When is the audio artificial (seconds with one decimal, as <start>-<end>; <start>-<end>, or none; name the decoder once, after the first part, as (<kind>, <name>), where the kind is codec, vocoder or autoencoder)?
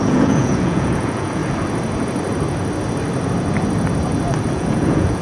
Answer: 0.0-1.4 (vocoder, Vocos); 4.5-5.2